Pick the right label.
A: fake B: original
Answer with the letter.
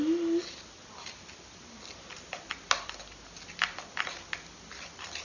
B